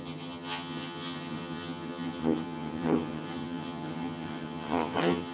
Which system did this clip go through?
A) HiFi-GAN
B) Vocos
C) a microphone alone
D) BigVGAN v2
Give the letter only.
A